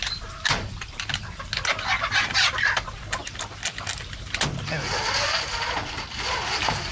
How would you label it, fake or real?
real